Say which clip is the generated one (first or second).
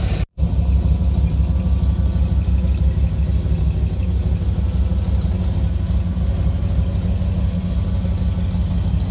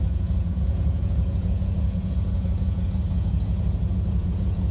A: second